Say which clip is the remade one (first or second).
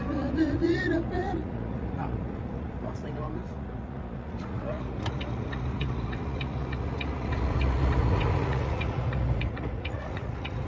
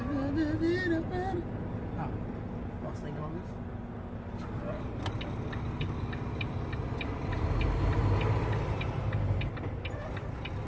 first